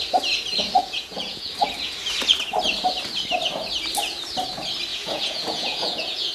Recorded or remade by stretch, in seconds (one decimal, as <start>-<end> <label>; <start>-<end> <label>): 0.0-0.8 recorded; 0.8-1.5 remade; 1.5-4.9 recorded; 4.9-6.3 remade